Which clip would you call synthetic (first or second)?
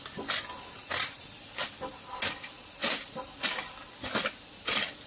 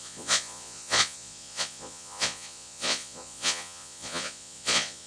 second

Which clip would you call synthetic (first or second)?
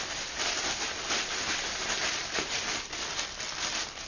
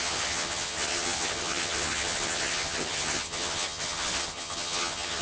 second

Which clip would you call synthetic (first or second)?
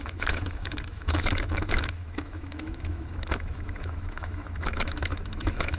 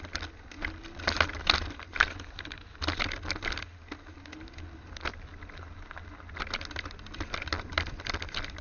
first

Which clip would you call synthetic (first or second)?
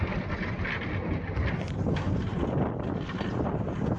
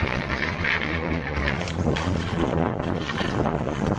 second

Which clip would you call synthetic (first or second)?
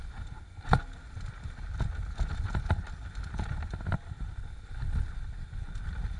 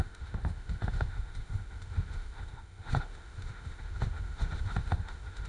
second